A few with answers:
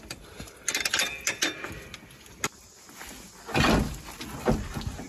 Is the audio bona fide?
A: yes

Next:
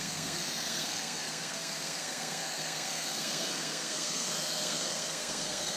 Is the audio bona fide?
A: no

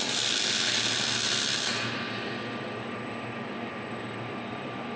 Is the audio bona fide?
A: yes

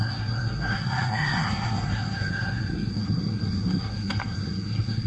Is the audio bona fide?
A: no